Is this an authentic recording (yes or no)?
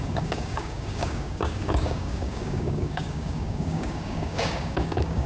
no